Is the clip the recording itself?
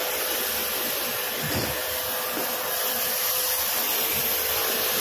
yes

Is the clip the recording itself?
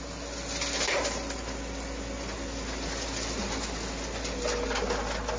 yes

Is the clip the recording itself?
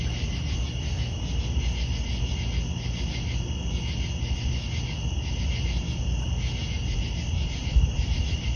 yes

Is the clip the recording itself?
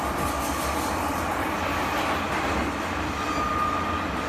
yes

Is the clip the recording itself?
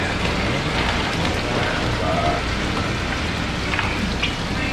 yes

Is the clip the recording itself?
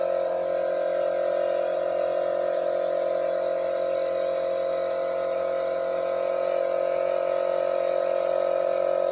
yes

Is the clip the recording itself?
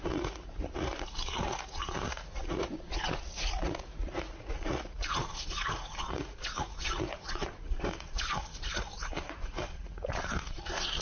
no